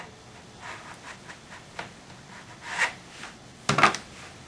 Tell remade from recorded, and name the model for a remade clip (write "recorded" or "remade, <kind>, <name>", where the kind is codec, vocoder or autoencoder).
recorded